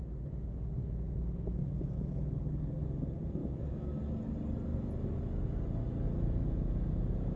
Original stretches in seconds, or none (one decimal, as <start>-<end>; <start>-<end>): 0.0-0.8; 2.5-3.4; 4.0-7.4